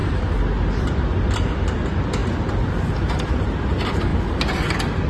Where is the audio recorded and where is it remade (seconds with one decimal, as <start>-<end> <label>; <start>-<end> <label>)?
0.0-5.1 recorded